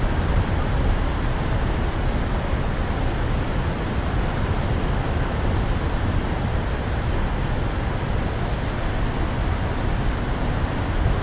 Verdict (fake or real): real